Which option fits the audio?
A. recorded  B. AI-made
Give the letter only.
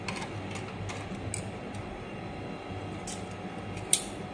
A